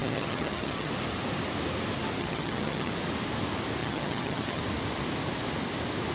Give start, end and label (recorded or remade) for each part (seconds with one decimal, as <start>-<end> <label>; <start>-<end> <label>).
0.0-0.9 remade; 0.9-2.2 recorded; 2.2-2.9 remade; 2.9-3.8 recorded; 3.8-4.6 remade; 4.6-6.1 recorded